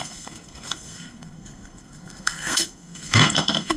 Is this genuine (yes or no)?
no